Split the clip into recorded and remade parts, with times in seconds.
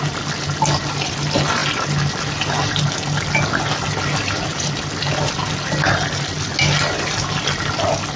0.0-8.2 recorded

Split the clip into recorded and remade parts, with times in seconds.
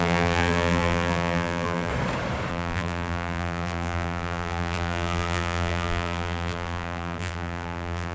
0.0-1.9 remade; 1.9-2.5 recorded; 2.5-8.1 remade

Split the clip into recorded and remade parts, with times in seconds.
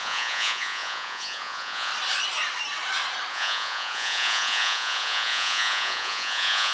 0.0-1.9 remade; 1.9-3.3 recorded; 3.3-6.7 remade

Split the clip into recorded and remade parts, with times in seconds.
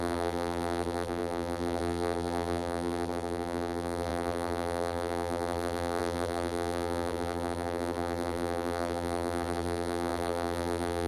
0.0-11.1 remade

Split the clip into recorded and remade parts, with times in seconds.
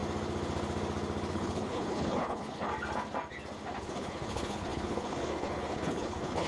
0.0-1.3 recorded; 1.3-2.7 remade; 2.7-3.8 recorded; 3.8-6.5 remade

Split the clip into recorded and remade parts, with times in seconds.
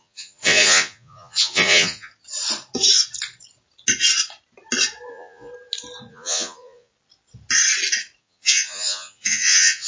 0.0-2.1 remade; 2.1-5.1 recorded; 5.1-5.5 remade; 5.5-6.1 recorded; 6.1-6.9 remade; 6.9-8.2 recorded; 8.2-9.9 remade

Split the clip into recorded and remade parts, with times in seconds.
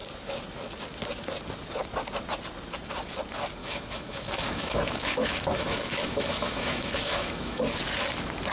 0.0-3.6 recorded; 3.6-7.6 remade; 7.6-8.5 recorded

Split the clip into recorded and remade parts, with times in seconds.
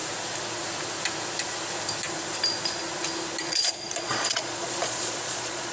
0.0-3.4 recorded; 3.4-5.7 remade